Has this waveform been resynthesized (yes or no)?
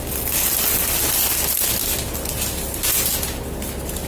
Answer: no